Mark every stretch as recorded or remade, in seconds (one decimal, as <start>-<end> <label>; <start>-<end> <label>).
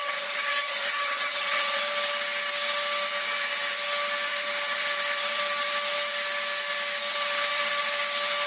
0.0-1.8 remade; 1.8-8.5 recorded